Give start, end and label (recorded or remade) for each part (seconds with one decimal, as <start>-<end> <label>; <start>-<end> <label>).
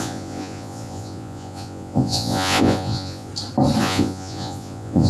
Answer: 0.0-3.3 remade; 3.3-3.8 recorded; 3.8-5.1 remade